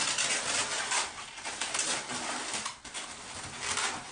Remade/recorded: recorded